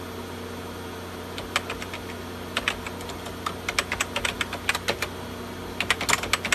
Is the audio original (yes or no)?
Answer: yes